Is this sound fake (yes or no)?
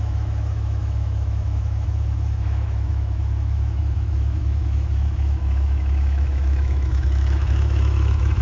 yes